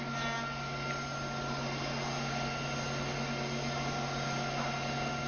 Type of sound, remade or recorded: recorded